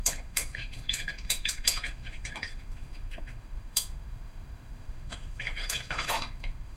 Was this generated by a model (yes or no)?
yes